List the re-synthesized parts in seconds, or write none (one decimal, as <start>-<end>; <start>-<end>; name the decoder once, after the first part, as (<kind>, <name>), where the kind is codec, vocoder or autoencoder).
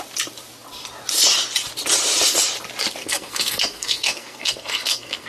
3.0-5.3 (codec, SNAC)